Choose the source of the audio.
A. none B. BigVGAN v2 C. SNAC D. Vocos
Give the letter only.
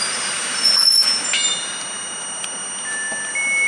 A